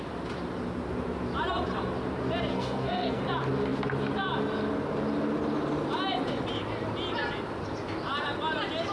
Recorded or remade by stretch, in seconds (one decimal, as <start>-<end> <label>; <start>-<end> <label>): 0.0-2.5 recorded; 2.5-3.2 remade; 3.2-8.9 recorded